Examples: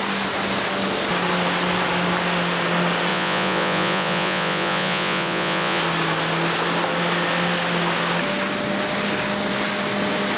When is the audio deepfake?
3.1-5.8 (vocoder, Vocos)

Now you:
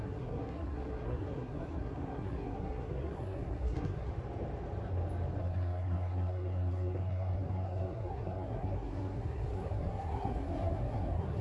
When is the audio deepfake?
0.0-4.1 (codec, SNAC); 5.4-11.4

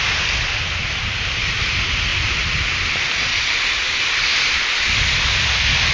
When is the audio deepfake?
0.0-0.8 (vocoder, BigVGAN v2); 1.4-3.3

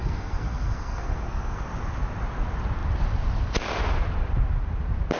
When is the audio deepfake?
0.0-1.7 (codec, SNAC)